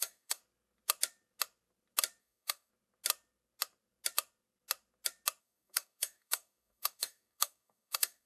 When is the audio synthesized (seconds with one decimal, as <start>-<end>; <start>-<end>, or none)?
0.0-0.4; 2.2-2.7; 5.4-8.3